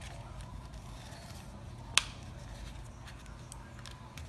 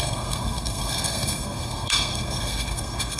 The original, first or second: first